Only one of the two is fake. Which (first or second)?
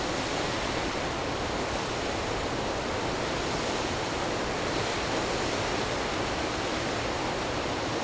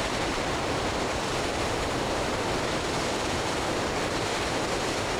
second